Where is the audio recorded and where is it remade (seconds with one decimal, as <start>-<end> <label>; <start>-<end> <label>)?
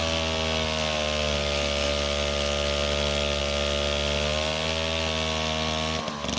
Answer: 0.0-6.4 recorded